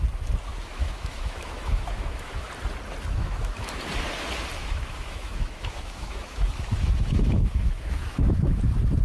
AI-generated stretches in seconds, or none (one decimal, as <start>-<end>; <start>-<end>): 0.5-2.5; 3.2-3.8; 4.6-8.6